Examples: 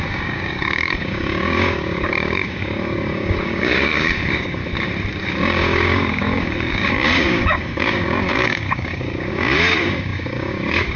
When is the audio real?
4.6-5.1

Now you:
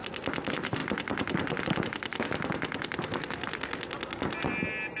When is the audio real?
0.0-5.0

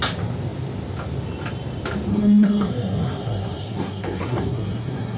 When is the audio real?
0.0-2.1

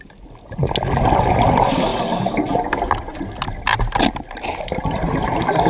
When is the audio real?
0.0-5.7

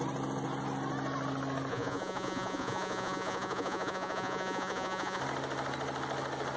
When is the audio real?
0.0-1.7; 5.2-6.6

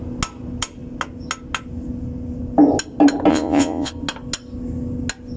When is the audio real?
0.0-3.3; 3.9-5.4

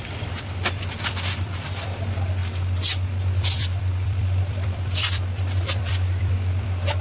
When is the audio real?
2.4-3.3